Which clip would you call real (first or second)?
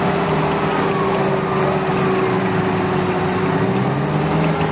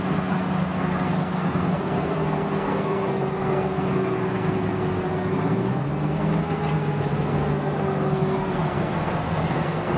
first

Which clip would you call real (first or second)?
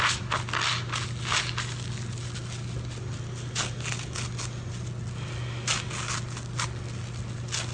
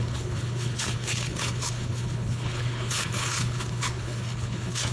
first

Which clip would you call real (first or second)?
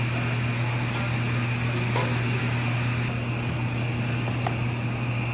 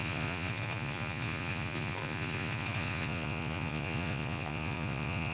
first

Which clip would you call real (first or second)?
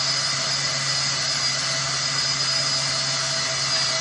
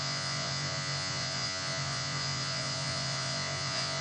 first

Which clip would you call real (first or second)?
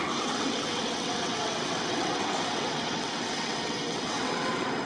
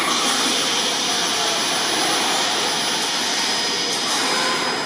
second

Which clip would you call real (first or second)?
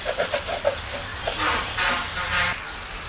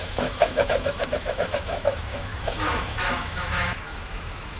first